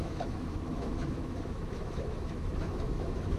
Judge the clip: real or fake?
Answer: fake